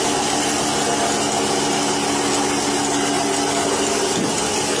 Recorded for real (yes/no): yes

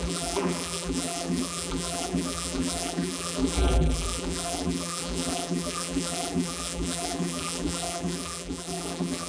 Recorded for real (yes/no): no